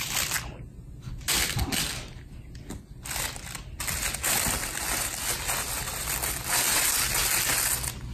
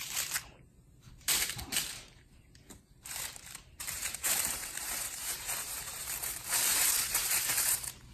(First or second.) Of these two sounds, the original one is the first